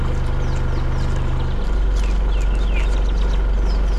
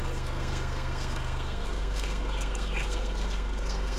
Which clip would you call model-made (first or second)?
second